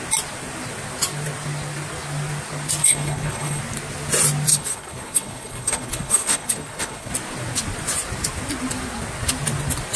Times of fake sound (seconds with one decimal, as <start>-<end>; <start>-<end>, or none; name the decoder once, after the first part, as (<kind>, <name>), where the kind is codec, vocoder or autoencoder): 2.8-3.6 (codec, HILCodec); 4.5-7.1